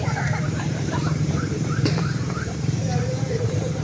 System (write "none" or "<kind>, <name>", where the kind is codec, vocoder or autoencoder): vocoder, BigVGAN v2